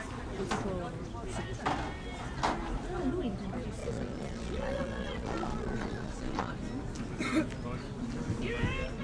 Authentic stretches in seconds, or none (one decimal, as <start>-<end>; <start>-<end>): 0.0-3.8; 6.5-9.0